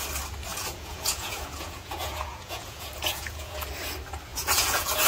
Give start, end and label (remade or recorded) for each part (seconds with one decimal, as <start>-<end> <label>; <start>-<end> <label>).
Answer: 0.0-0.5 recorded; 0.5-3.6 remade; 3.6-4.3 recorded; 4.3-5.1 remade